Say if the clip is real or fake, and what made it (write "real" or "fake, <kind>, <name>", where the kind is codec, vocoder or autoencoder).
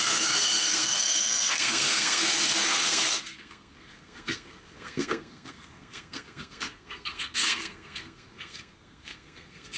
fake, codec, SNAC